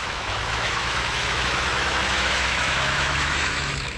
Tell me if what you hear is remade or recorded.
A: remade